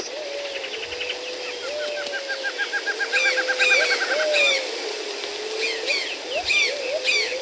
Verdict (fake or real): real